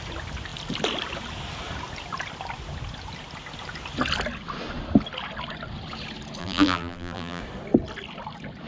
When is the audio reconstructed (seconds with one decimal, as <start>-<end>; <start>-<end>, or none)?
6.4-7.4